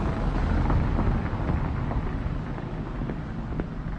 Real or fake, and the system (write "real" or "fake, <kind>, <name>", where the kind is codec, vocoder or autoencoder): real